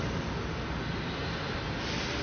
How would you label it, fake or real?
real